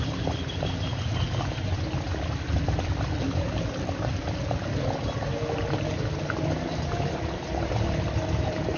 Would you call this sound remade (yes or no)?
no